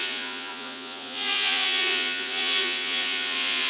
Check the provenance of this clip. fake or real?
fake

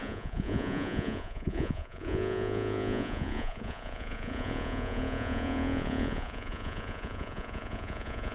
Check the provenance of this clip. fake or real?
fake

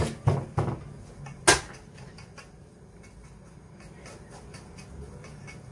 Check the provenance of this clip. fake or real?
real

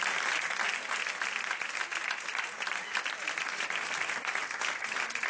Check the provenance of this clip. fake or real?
real